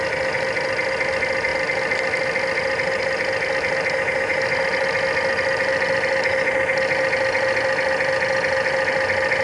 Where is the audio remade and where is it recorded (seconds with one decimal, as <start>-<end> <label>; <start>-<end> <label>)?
0.0-9.4 recorded